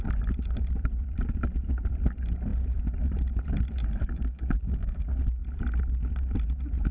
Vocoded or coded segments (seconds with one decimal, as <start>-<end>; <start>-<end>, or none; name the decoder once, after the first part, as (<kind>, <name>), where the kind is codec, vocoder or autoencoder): 4.0-5.0 (codec, DAC)